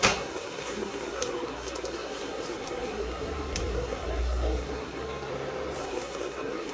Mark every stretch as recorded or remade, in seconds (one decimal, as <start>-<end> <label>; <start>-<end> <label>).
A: 0.0-5.3 remade; 5.3-5.8 recorded; 5.8-6.7 remade